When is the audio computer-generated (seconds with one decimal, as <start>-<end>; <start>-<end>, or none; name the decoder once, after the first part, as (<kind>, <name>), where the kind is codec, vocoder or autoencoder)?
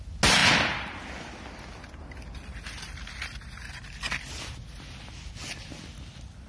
none